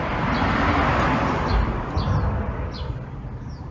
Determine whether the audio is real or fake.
real